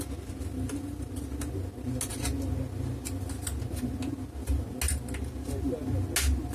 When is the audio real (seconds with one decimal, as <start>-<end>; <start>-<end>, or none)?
0.0-6.5